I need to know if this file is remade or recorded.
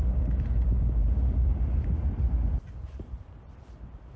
recorded